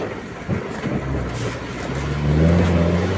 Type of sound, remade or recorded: recorded